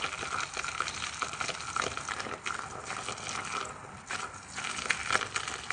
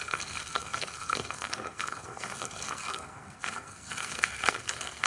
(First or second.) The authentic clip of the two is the first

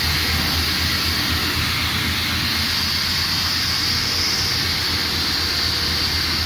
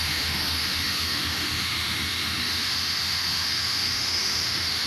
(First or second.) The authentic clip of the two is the first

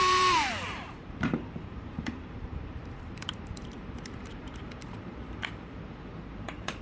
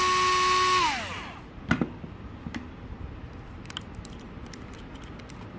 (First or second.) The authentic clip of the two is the second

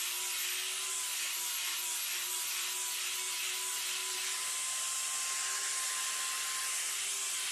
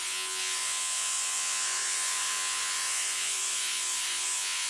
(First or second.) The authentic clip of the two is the first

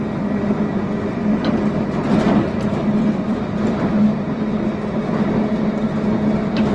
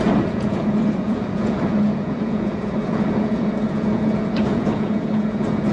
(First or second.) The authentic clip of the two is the first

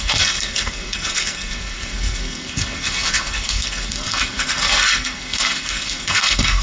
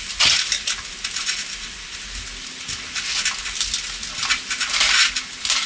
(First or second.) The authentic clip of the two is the second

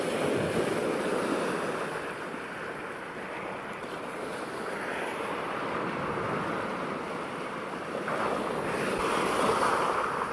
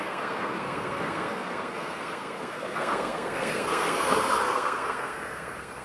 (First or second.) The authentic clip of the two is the first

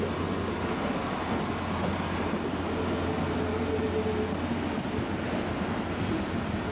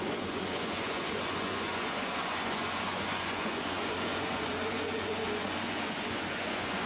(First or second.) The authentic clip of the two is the first